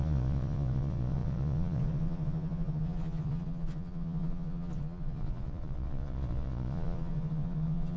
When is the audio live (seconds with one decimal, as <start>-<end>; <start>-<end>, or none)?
none